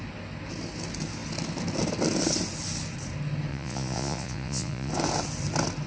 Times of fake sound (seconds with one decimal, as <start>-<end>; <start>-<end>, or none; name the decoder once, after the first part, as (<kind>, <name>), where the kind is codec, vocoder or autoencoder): 3.5-4.9 (vocoder, Vocos)

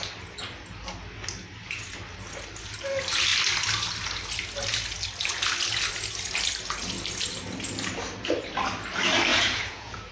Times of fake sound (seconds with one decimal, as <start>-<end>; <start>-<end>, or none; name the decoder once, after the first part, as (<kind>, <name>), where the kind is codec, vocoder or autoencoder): 9.3-10.1 (vocoder, Vocos)